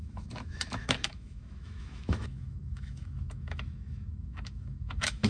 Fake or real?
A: fake